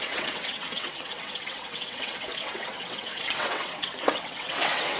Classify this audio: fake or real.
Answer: fake